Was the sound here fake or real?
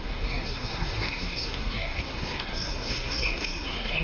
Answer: fake